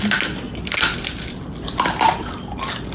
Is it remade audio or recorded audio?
recorded